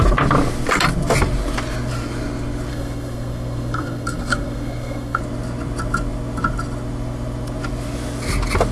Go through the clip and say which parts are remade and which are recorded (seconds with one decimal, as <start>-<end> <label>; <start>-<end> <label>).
0.0-2.7 recorded; 2.7-5.2 remade; 5.2-8.7 recorded